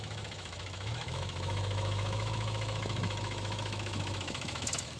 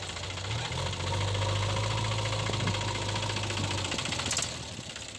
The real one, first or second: second